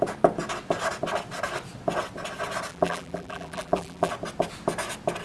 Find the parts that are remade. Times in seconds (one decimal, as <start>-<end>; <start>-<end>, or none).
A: 2.7-4.1